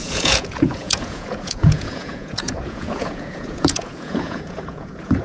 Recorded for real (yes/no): no